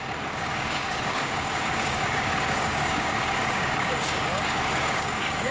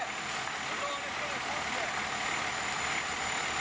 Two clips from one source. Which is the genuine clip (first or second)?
second